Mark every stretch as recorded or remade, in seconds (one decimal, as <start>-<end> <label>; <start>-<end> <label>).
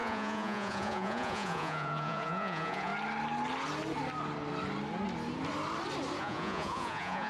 0.0-2.9 remade; 2.9-6.2 recorded; 6.2-7.3 remade